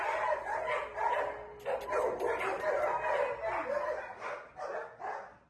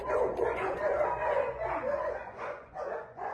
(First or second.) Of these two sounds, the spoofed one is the second